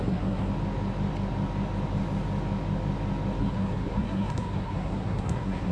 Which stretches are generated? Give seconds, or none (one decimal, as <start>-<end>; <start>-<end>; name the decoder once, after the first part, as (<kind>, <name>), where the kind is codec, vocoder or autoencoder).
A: 0.0-0.5 (codec, SNAC); 3.4-5.7